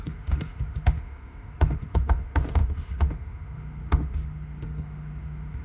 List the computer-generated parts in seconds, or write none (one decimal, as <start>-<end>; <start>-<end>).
0.0-5.6